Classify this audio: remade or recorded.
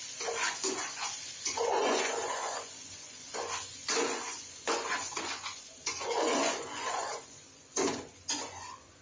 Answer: remade